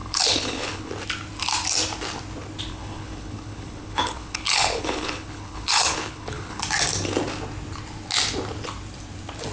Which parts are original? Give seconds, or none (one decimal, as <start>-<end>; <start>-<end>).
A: 0.9-2.7; 6.6-9.5

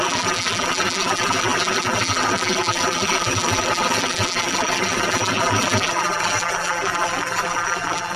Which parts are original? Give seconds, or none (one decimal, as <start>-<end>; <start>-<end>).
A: none

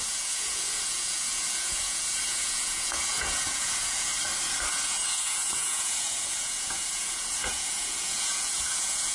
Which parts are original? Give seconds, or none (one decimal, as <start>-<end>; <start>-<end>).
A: 4.1-4.7